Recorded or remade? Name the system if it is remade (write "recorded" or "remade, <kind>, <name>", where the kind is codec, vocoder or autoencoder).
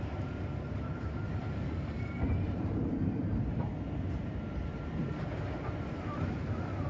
remade, vocoder, BigVGAN v2